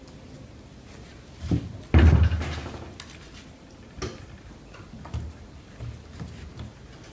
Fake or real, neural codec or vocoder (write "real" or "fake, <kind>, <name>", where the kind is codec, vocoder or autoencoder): real